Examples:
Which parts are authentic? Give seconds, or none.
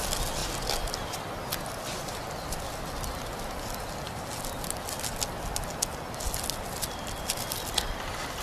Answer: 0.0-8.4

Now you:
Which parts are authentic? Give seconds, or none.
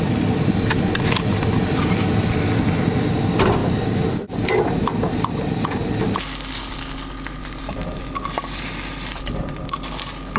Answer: 0.0-10.4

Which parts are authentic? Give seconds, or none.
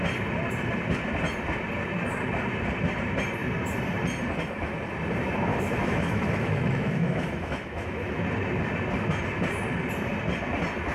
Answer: 0.0-5.5; 8.2-10.9